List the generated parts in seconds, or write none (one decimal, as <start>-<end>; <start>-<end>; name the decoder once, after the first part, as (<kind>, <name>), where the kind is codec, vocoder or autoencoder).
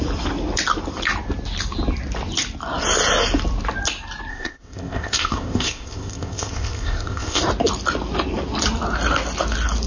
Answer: 4.3-7.4 (codec, ZipCodec)